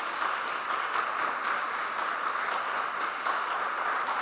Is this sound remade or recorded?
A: recorded